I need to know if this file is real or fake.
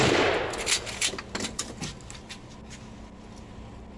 real